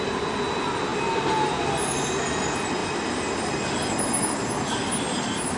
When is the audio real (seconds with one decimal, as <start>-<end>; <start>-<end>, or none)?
0.0-2.8; 3.9-5.6